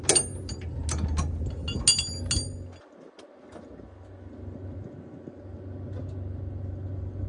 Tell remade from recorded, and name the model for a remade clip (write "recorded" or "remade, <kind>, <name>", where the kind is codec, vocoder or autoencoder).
recorded